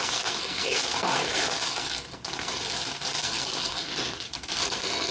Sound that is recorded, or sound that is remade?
remade